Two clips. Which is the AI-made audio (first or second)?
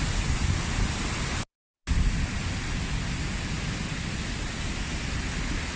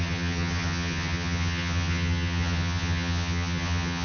second